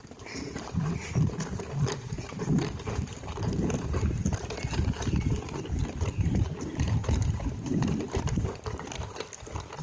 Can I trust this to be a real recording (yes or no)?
no